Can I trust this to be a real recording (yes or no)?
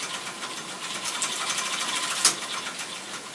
yes